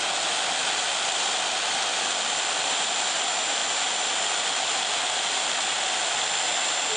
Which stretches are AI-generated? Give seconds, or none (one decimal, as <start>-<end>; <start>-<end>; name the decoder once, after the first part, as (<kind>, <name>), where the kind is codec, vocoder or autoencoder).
none